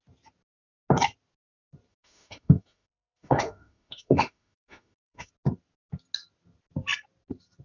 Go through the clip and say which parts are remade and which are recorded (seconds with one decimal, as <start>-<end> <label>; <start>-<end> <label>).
0.0-1.9 recorded; 1.9-5.3 remade; 5.3-7.6 recorded